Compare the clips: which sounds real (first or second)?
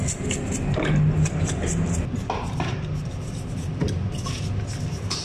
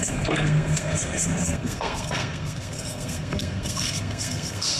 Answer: first